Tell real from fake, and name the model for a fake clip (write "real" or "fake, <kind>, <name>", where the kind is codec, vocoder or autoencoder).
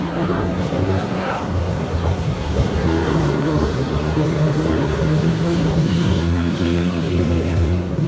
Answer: fake, codec, SNAC